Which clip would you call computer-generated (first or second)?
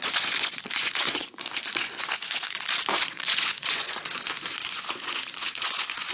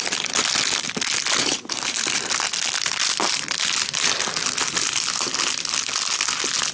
first